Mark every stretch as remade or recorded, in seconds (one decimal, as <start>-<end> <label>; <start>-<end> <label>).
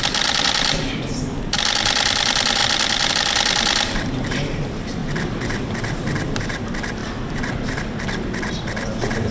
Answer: 0.0-2.6 remade; 2.6-3.1 recorded; 3.1-9.3 remade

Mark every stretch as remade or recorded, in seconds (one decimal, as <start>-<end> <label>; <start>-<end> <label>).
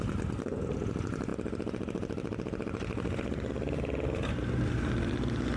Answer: 0.0-5.6 recorded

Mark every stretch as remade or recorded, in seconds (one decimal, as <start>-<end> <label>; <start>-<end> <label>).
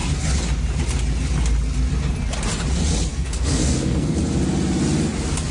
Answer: 0.0-3.1 recorded; 3.1-4.2 remade; 4.2-5.5 recorded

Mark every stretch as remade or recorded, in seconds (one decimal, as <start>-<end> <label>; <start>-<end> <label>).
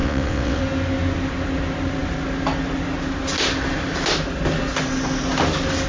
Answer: 0.0-0.6 remade; 0.6-5.9 recorded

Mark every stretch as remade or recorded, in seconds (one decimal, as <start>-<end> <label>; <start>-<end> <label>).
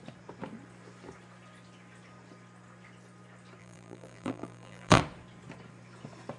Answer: 0.0-3.6 recorded; 3.6-5.0 remade; 5.0-6.4 recorded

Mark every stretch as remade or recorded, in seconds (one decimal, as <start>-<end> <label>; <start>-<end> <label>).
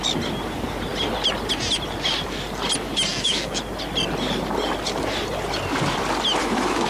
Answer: 0.0-3.1 recorded; 3.1-3.6 remade; 3.6-6.4 recorded; 6.4-6.9 remade